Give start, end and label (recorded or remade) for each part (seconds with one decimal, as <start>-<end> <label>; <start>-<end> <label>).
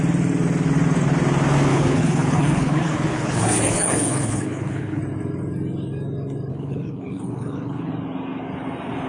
0.0-1.7 recorded; 1.7-5.0 remade; 5.0-6.5 recorded; 6.5-7.9 remade; 7.9-9.1 recorded